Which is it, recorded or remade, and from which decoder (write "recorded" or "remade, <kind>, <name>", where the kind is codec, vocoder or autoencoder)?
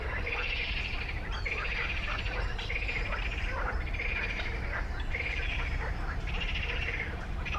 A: recorded